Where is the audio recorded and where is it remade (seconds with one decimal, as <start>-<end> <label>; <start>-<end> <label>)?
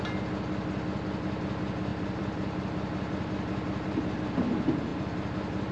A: 0.0-1.9 recorded; 1.9-4.2 remade; 4.2-4.9 recorded; 4.9-5.7 remade